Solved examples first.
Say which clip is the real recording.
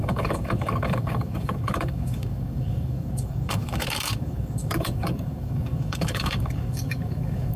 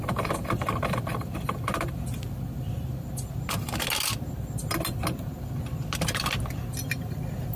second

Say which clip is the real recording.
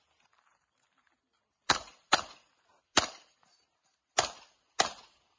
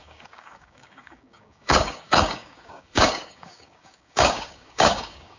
first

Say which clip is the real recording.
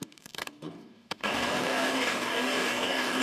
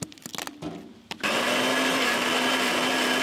second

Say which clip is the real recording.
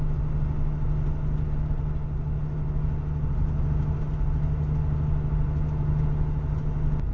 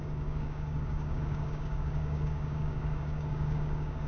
first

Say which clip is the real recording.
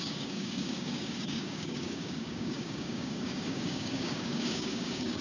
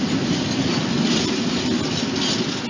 second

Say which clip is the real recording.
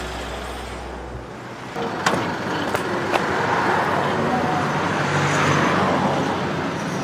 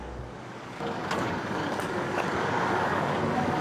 first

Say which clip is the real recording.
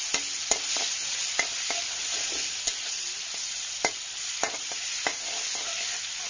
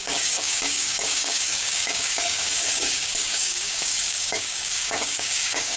first